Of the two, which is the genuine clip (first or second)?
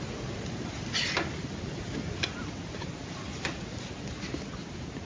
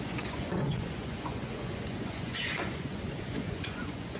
first